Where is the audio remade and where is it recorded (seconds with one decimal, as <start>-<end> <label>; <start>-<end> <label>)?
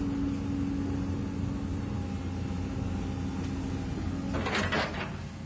0.0-5.5 recorded